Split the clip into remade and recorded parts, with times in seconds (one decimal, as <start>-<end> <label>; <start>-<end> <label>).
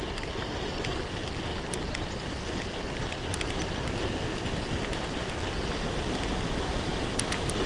0.0-7.7 recorded